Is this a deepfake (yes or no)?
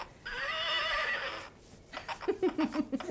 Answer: no